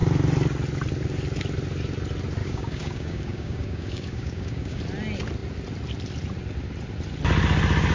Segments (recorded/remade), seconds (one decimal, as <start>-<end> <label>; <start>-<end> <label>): 0.0-2.4 recorded; 2.4-4.8 remade; 4.8-7.9 recorded